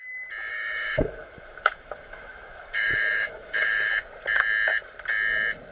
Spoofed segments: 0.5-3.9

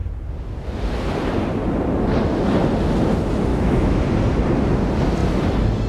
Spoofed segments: 3.5-4.0

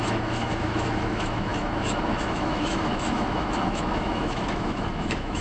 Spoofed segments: 0.0-5.4

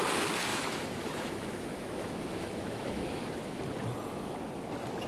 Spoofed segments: 0.5-3.6

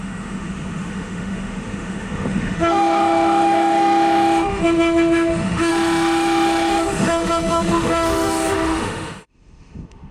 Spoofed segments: 0.0-10.1

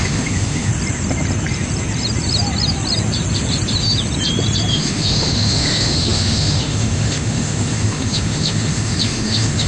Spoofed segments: 0.0-0.7; 4.7-9.7

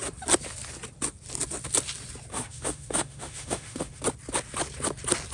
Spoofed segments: 2.3-4.0